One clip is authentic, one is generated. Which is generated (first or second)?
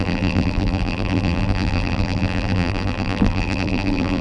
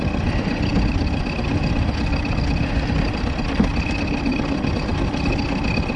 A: first